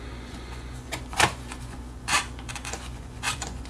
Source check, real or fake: fake